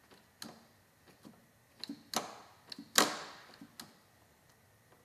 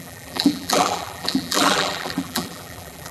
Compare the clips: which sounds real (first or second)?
first